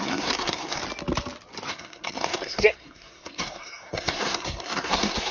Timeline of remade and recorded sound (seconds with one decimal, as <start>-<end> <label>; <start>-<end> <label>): 0.0-0.8 remade; 0.8-1.7 recorded; 1.7-5.3 remade